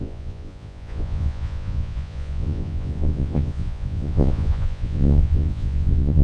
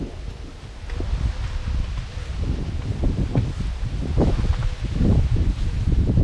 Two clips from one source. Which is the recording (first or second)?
second